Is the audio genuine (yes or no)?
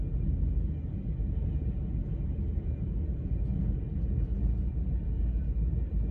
yes